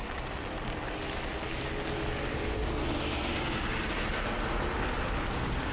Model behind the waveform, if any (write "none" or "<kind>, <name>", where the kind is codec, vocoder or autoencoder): none